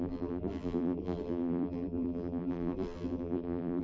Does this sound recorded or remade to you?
remade